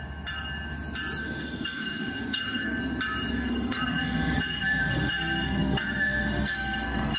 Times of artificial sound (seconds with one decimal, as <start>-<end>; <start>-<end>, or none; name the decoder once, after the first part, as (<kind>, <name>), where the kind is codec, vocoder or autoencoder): 1.2-2.8 (codec, SNAC); 3.3-7.2